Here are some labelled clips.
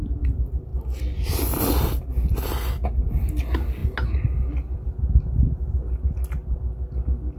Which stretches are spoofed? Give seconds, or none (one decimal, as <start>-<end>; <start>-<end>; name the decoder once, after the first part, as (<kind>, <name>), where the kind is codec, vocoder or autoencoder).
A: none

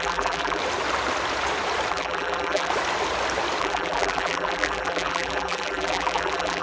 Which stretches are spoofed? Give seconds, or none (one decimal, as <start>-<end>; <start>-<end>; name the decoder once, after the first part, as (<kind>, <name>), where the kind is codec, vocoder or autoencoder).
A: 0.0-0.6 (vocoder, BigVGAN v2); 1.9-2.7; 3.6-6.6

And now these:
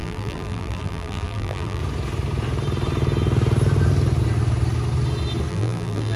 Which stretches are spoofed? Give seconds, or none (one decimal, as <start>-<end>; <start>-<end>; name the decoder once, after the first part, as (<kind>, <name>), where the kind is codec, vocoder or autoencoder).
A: 0.0-1.8 (vocoder, BigVGAN v2); 5.5-6.2